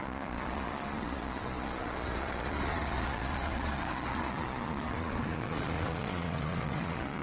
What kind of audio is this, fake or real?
fake